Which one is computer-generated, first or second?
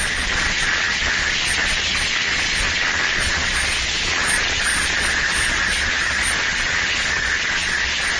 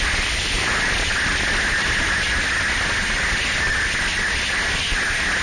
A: first